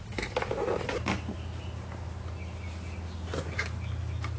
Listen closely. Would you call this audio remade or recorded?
recorded